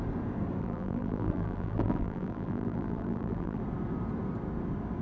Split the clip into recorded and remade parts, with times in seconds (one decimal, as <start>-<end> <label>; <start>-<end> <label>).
0.0-0.6 recorded; 0.6-3.6 remade; 3.6-5.0 recorded

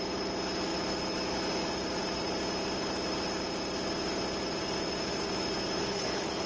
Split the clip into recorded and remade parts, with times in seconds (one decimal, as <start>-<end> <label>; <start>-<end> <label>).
0.0-5.8 recorded; 5.8-6.5 remade

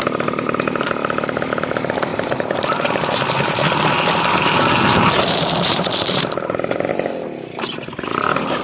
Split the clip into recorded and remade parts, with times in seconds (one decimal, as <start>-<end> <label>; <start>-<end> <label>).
0.0-0.9 remade; 0.9-2.1 recorded; 2.1-6.9 remade; 6.9-8.6 recorded

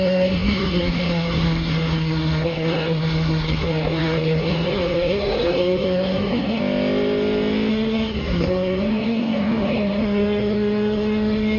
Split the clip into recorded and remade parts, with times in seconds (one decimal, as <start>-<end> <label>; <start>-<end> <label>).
0.0-6.6 remade; 6.6-7.7 recorded; 7.7-11.6 remade

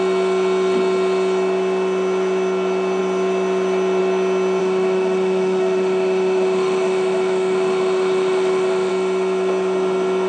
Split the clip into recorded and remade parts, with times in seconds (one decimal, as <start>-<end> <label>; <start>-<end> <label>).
0.0-4.6 recorded; 4.6-8.9 remade; 8.9-10.3 recorded

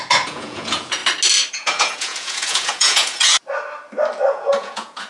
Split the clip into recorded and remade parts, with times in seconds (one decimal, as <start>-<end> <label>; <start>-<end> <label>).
0.0-1.0 remade; 1.0-1.5 recorded; 1.5-3.4 remade; 3.4-4.3 recorded; 4.3-5.1 remade

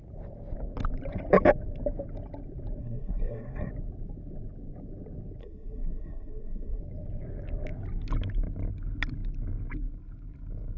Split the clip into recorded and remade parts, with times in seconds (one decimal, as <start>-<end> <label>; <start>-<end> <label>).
0.0-2.8 recorded; 2.8-3.7 remade; 3.7-5.4 recorded; 5.4-6.8 remade; 6.8-10.8 recorded